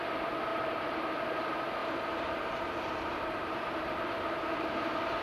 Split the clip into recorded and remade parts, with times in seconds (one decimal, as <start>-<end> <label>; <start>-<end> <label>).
0.0-0.5 recorded; 0.5-1.2 remade; 1.2-1.8 recorded; 1.8-5.2 remade